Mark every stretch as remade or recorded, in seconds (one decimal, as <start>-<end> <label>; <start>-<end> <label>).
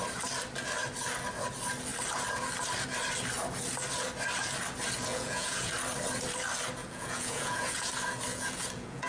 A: 0.0-5.1 recorded; 5.1-5.7 remade; 5.7-6.8 recorded; 6.8-7.9 remade; 7.9-8.3 recorded; 8.3-9.1 remade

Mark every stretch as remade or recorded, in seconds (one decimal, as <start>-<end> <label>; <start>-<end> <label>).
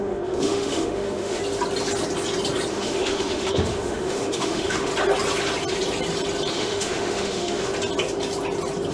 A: 0.0-1.4 remade; 1.4-2.7 recorded; 2.7-4.9 remade; 4.9-6.5 recorded; 6.5-7.7 remade; 7.7-8.9 recorded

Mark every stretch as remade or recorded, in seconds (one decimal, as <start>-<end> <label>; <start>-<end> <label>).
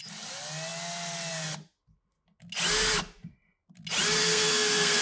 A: 0.0-4.2 recorded; 4.2-5.0 remade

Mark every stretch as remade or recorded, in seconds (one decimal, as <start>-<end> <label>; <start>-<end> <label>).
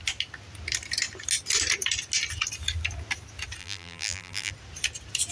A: 0.0-3.6 recorded; 3.6-4.5 remade; 4.5-5.3 recorded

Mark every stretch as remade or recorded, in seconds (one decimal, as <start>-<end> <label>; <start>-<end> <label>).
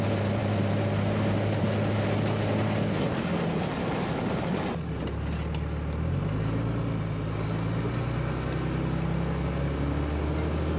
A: 0.0-0.4 recorded; 0.4-1.6 remade; 1.6-10.8 recorded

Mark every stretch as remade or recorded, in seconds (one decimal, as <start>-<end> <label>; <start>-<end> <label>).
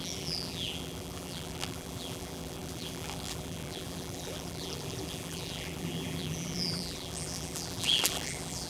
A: 0.0-8.7 remade